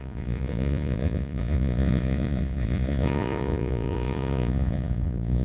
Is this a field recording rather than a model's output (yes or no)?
no